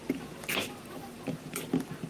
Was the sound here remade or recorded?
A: recorded